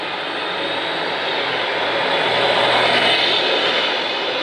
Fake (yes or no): no